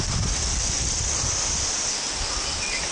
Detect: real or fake real